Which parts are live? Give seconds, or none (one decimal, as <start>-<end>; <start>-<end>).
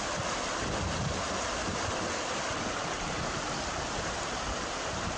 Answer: 0.0-5.2